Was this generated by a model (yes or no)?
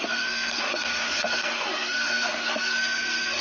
yes